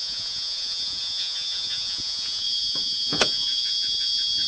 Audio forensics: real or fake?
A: fake